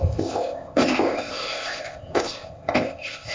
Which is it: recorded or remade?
remade